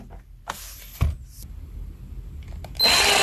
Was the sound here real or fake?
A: real